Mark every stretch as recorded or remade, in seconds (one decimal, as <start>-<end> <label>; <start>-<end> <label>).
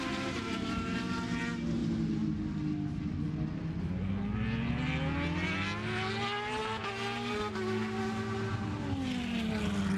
0.0-10.0 recorded